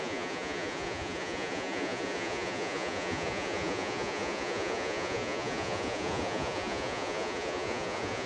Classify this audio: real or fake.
fake